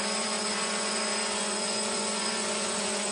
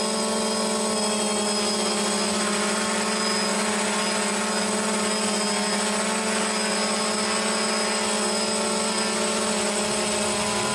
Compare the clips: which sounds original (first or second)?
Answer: second